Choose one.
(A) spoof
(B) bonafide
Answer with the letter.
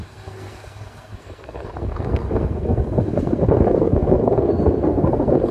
A